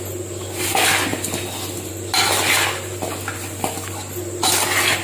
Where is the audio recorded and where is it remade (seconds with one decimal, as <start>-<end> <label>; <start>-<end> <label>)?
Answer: 0.0-5.0 recorded